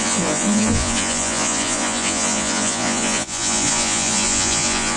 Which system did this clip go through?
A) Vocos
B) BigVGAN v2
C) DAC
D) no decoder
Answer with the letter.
A